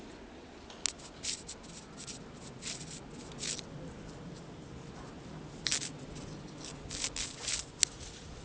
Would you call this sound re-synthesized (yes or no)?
no